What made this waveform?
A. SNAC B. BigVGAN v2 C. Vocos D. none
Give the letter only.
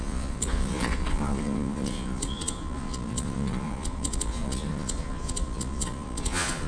C